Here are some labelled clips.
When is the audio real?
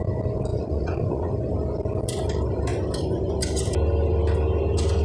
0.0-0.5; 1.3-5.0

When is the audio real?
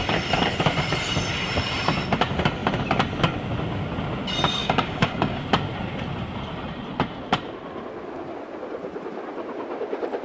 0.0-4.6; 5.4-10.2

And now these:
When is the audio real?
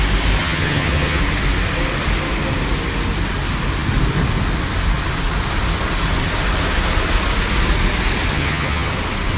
0.0-0.4; 1.2-8.3; 8.9-9.4